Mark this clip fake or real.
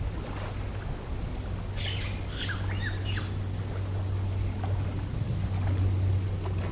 real